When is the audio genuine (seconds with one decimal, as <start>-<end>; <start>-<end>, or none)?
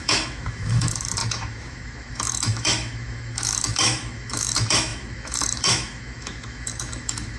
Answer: none